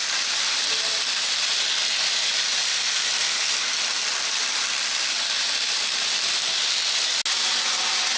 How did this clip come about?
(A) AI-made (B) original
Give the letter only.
B